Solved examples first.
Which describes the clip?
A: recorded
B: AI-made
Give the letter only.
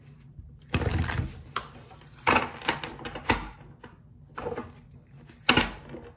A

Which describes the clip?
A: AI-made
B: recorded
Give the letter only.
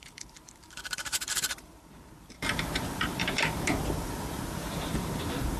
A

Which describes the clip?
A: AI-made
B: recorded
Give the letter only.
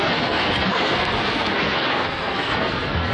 A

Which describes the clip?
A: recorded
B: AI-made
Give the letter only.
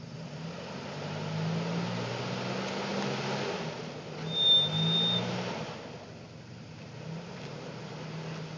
A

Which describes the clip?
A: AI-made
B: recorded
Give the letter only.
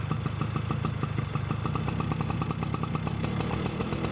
B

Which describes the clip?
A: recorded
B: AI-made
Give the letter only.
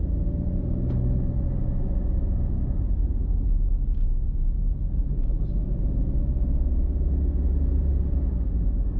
A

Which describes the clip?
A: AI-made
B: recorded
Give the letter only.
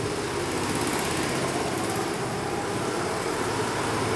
B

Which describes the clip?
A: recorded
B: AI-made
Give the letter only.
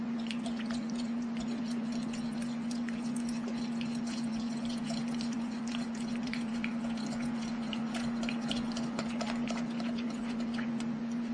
B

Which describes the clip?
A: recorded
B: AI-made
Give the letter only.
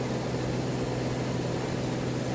A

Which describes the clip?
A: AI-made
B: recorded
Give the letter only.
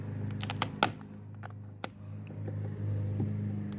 B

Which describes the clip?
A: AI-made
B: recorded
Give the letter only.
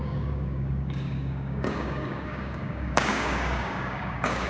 A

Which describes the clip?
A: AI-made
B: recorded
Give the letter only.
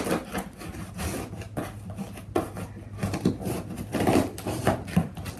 B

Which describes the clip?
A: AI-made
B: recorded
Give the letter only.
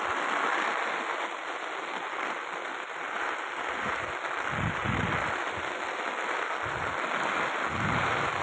B